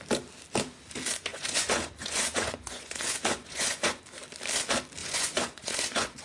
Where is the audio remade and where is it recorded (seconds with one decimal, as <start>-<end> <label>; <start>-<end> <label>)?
0.0-1.3 recorded; 1.3-4.0 remade; 4.0-5.0 recorded; 5.0-6.2 remade